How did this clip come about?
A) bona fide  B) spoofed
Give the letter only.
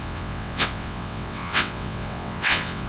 B